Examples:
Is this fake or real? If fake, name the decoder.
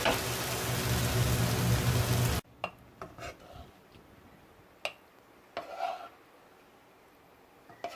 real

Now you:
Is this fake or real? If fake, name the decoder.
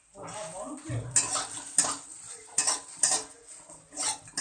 real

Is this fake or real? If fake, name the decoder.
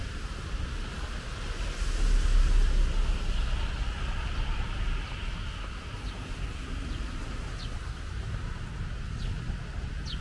real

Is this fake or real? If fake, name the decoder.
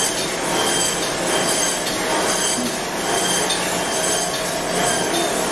real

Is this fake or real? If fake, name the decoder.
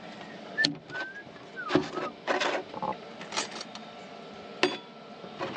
real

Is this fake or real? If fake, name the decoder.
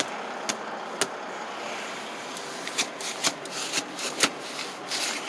real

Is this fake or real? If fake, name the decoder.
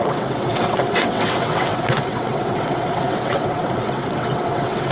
fake, vocoder, WaveNeXt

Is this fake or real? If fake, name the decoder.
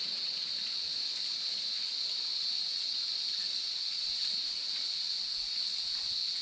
real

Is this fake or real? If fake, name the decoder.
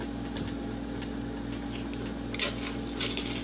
real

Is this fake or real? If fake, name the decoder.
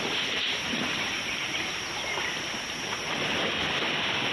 real